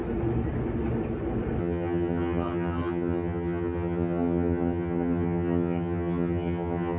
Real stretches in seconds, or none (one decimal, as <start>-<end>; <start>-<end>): 0.0-1.6